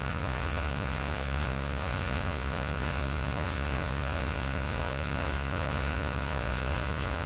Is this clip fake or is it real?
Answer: fake